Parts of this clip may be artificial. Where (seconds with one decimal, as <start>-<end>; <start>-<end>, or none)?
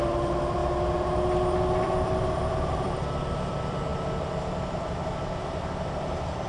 0.0-6.5